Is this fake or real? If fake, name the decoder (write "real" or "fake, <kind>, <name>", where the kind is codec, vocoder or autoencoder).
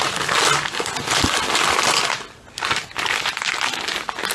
real